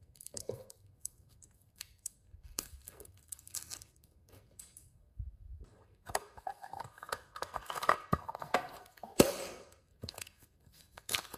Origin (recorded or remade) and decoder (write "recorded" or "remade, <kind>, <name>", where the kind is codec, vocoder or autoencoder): remade, codec, SNAC